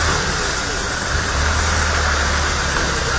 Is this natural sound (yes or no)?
yes